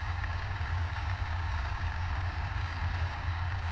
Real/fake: fake